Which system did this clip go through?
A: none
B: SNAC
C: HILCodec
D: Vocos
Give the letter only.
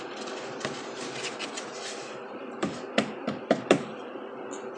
A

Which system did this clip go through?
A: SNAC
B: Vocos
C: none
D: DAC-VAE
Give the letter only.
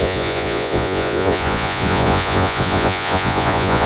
B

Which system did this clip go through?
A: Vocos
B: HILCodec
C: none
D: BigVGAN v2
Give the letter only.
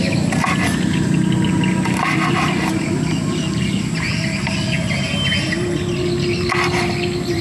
C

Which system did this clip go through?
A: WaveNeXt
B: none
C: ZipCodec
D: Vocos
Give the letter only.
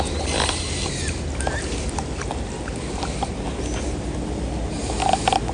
B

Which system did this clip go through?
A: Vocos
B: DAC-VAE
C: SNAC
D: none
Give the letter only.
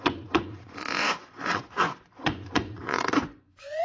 A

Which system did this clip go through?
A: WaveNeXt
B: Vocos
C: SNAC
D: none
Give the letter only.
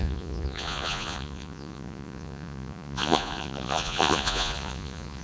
B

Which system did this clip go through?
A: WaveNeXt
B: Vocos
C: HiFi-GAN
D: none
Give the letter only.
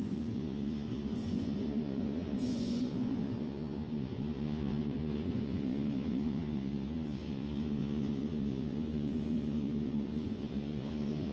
B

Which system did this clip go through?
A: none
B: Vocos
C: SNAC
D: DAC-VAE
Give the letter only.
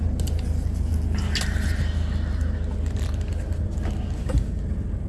A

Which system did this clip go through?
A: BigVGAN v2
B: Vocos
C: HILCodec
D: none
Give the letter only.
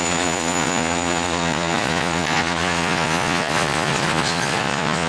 B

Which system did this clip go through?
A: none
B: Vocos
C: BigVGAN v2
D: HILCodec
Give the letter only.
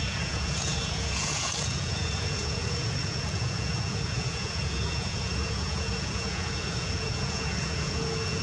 B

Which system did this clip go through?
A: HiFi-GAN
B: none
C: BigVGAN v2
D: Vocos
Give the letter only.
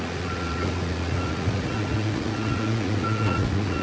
D